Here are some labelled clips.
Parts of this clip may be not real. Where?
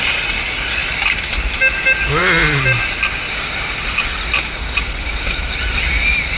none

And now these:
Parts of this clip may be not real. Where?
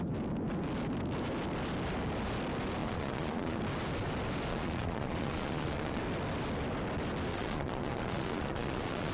2.8-3.6 (vocoder, Vocos); 4.5-6.0; 7.3-9.1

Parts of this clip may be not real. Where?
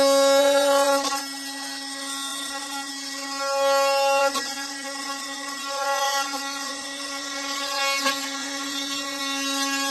0.4-1.2 (vocoder, Vocos); 2.3-2.9; 4.2-7.8; 8.4-9.2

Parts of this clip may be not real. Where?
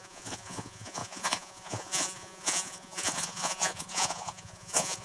0.0-5.0 (vocoder, Vocos)